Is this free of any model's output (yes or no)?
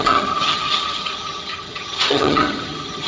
no